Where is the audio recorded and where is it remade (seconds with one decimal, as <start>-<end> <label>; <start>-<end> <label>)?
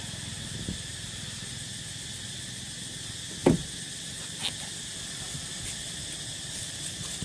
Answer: 0.0-7.2 recorded